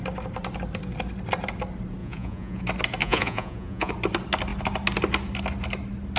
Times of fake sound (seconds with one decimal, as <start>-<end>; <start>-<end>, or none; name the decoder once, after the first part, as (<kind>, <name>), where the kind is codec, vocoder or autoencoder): 2.0-2.6 (vocoder, Vocos); 3.0-3.9